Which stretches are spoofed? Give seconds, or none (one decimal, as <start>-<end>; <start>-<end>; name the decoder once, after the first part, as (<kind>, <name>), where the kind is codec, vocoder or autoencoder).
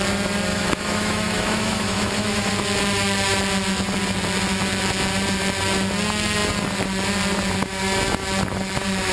0.5-2.5 (autoencoder, DAC-VAE)